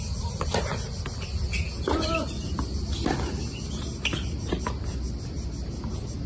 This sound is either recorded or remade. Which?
recorded